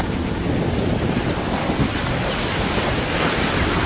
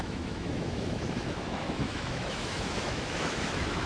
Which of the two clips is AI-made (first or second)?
second